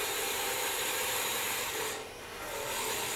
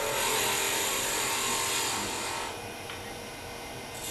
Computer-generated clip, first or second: first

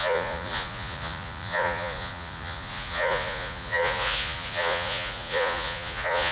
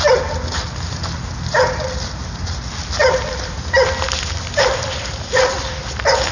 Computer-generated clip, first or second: first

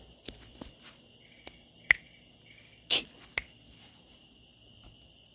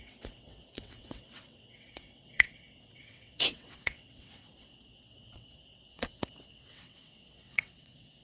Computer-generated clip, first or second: second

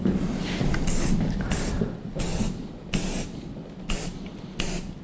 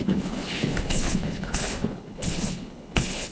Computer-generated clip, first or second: second